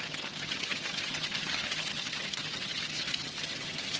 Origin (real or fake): fake